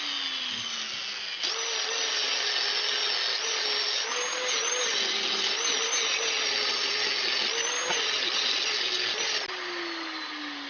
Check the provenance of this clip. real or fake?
real